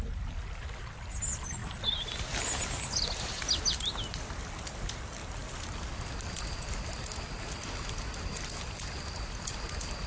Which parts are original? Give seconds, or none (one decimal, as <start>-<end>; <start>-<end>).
0.0-10.1